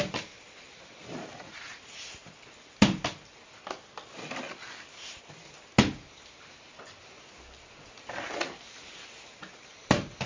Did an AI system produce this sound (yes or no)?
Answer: no